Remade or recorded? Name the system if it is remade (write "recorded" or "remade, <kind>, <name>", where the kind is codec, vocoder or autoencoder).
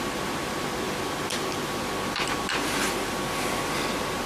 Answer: recorded